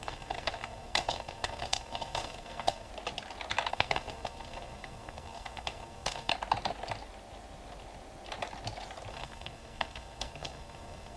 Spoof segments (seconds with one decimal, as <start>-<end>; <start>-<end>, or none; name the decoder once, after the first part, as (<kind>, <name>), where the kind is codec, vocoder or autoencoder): 0.0-2.9 (codec, SNAC); 3.7-6.3; 9.1-11.2